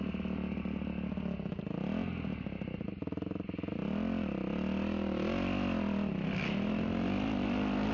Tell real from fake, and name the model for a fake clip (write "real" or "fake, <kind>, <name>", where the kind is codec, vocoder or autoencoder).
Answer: real